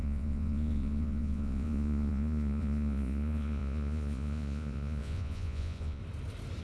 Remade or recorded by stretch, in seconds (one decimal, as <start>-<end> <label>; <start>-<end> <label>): 0.0-6.0 remade; 6.0-6.6 recorded